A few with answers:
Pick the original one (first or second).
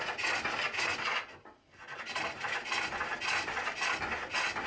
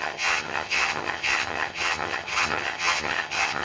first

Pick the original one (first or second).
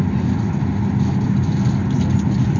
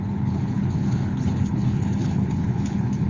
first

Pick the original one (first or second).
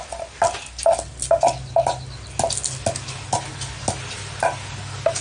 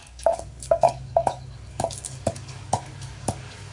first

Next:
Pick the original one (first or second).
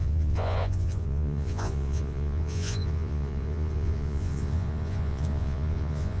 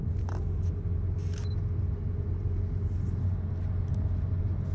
second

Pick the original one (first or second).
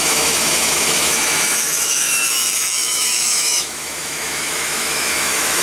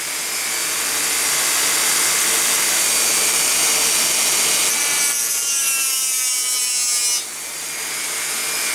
second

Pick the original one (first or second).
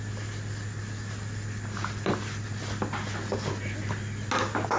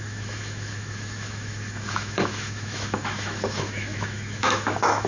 first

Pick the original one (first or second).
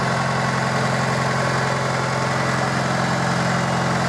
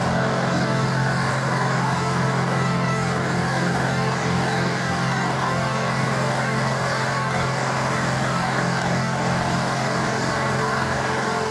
first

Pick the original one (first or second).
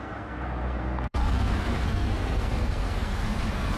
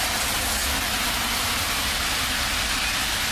second